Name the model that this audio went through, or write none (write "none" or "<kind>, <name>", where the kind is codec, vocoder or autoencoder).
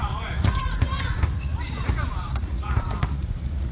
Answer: vocoder, Vocos